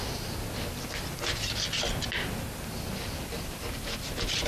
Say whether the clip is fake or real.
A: real